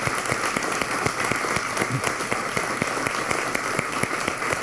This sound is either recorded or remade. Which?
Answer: recorded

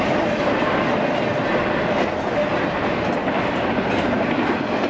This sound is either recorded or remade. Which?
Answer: recorded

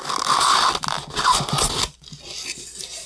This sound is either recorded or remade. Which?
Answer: recorded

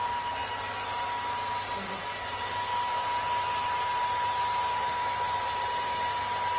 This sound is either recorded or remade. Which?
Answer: recorded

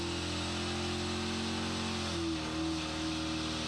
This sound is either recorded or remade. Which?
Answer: recorded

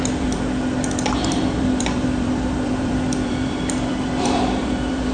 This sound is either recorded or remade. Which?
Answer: remade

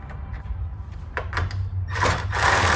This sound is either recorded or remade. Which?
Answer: remade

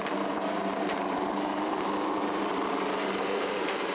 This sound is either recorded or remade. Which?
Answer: remade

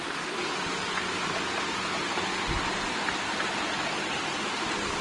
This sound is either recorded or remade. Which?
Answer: recorded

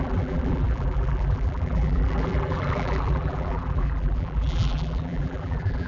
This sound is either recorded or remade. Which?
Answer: remade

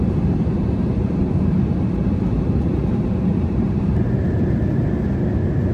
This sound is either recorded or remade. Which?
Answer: remade